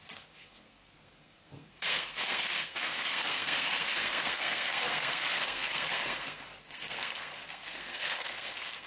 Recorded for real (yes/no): no